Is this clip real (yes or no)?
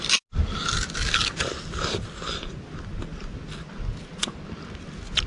yes